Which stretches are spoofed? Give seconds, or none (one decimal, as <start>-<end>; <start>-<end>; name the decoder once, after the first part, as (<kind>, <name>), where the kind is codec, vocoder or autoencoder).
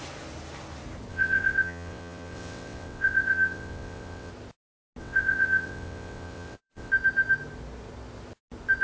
1.1-4.3 (vocoder, WaveNeXt); 5.0-6.9